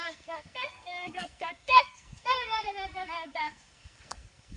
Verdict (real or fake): fake